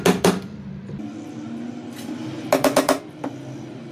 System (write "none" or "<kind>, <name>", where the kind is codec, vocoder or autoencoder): none